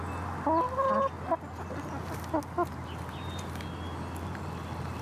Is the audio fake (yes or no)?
no